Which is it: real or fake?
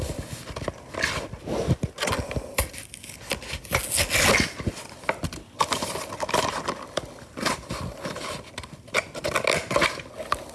real